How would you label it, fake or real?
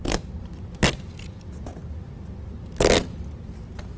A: real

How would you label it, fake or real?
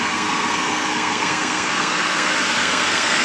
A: fake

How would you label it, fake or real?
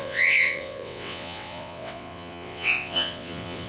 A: fake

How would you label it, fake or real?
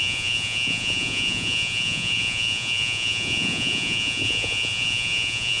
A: fake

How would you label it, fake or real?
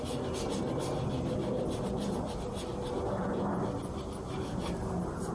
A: real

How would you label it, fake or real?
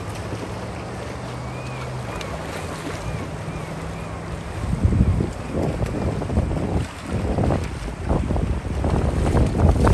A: real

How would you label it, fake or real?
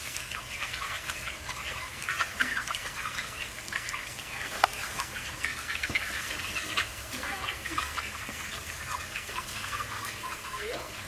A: fake